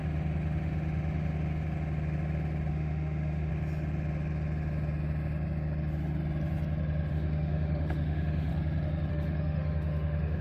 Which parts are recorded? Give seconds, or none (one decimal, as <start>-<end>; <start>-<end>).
0.0-2.7; 3.5-7.1; 8.5-9.1